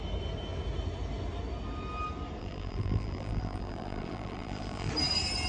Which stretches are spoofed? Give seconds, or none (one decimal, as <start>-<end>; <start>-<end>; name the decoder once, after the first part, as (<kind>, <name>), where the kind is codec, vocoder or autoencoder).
2.4-4.9 (vocoder, BigVGAN v2)